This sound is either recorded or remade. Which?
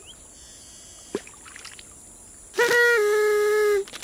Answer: recorded